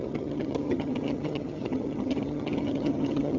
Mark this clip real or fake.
fake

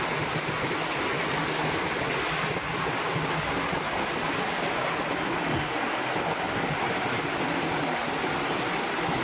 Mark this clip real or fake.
real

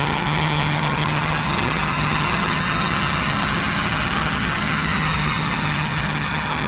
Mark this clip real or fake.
fake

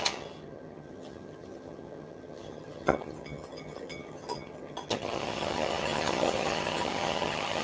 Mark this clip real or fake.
fake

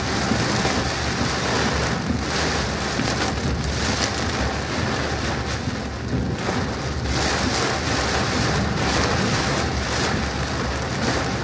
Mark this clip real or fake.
real